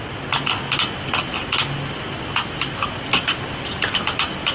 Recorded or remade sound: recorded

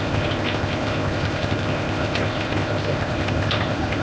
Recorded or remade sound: remade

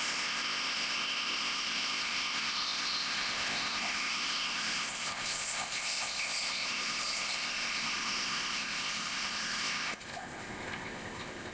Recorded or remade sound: remade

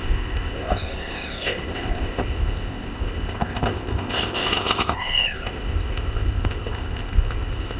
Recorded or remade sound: remade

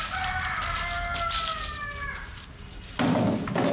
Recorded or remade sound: recorded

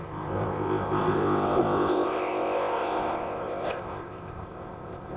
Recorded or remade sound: remade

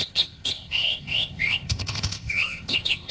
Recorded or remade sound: remade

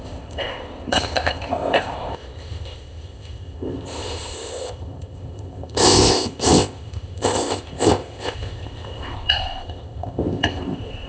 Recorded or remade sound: remade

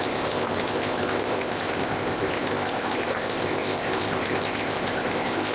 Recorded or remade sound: remade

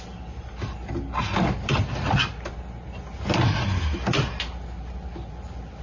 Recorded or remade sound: recorded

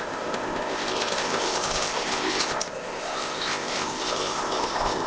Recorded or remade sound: remade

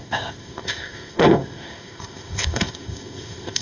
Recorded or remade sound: remade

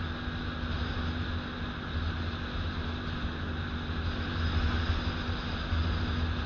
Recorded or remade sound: recorded